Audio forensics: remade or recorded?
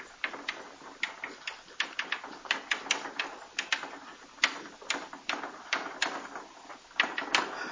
recorded